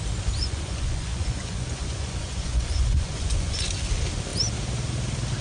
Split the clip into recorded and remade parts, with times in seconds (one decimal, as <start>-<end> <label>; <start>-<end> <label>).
0.0-0.4 recorded; 0.4-3.6 remade; 3.6-5.4 recorded

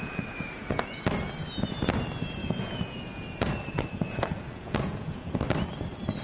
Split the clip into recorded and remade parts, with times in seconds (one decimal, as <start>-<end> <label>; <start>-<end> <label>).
0.0-1.0 remade; 1.0-2.4 recorded; 2.4-5.4 remade; 5.4-6.2 recorded

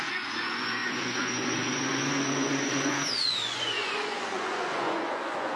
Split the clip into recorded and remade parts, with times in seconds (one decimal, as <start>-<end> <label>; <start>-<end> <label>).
0.0-5.6 remade

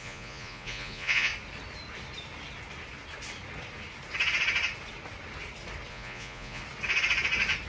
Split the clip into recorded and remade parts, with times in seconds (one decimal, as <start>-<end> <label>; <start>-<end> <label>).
0.0-1.3 remade; 1.3-5.9 recorded; 5.9-6.6 remade; 6.6-7.7 recorded

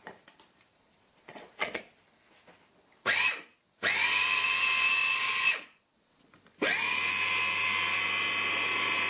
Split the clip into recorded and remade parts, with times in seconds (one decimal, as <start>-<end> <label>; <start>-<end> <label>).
0.0-0.7 recorded; 0.7-1.8 remade; 1.8-5.0 recorded; 5.0-6.3 remade; 6.3-9.1 recorded

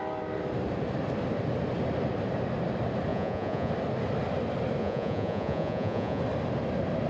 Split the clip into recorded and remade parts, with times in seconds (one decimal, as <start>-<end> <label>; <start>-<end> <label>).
0.0-3.1 recorded; 3.1-3.7 remade; 3.7-4.8 recorded; 4.8-6.2 remade; 6.2-7.1 recorded

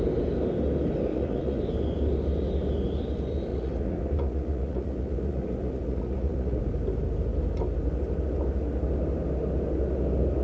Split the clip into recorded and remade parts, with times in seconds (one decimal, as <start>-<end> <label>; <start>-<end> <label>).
0.0-1.1 recorded; 1.1-1.6 remade; 1.6-3.5 recorded; 3.5-6.6 remade; 6.6-10.4 recorded